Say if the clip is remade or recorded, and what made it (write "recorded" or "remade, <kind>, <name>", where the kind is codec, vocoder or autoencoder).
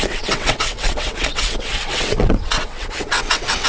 remade, vocoder, WaveNeXt